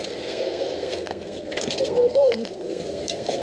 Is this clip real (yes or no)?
no